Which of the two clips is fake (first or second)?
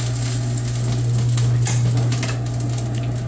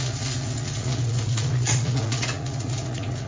second